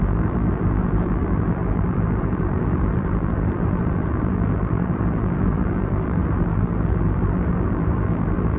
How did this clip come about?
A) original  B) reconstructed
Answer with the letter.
B